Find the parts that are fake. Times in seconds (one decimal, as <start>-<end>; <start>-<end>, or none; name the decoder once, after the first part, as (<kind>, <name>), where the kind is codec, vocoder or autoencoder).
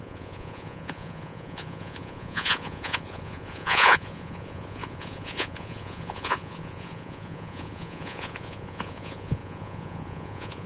0.0-10.7 (vocoder, Vocos)